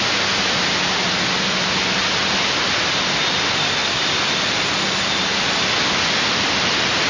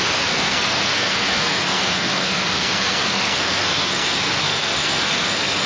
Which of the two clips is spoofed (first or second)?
second